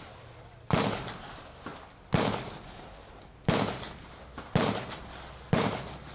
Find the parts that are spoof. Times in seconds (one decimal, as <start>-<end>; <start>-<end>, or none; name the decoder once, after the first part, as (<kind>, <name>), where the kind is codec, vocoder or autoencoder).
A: none